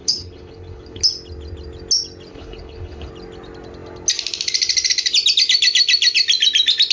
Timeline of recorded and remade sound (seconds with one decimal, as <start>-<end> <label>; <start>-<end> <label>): 0.0-1.0 remade; 1.0-2.3 recorded; 2.3-3.1 remade; 3.1-6.9 recorded

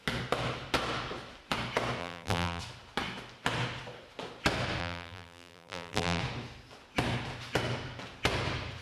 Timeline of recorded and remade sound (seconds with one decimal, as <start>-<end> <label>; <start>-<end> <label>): 0.0-2.0 recorded; 2.0-2.6 remade; 2.6-4.8 recorded; 4.8-6.2 remade; 6.2-8.8 recorded

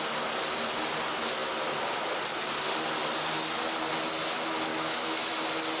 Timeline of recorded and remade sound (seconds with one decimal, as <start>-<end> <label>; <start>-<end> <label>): 0.0-4.7 recorded; 4.7-5.3 remade; 5.3-5.8 recorded

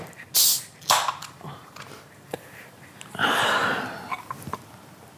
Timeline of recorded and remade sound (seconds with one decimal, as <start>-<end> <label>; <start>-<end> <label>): 0.0-1.2 recorded; 1.2-2.8 remade; 2.8-3.6 recorded; 3.6-4.3 remade; 4.3-5.2 recorded

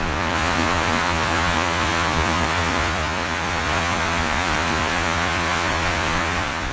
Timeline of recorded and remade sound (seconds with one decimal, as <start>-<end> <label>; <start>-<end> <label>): 0.0-6.7 remade